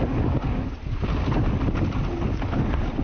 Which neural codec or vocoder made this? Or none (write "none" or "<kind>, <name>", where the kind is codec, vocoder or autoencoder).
none